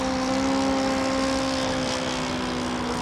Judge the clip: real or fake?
real